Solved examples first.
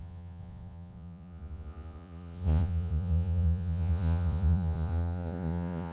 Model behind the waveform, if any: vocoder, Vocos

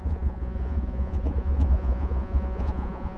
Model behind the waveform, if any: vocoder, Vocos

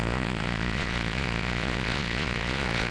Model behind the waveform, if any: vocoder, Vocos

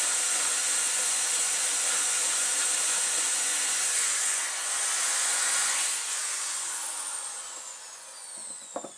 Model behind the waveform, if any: vocoder, Vocos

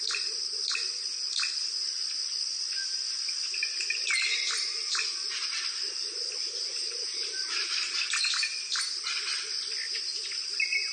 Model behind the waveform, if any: none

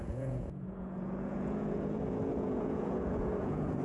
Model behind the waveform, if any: vocoder, Vocos